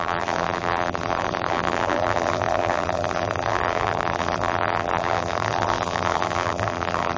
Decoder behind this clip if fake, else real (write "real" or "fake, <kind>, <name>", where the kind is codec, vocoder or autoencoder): fake, vocoder, BigVGAN v2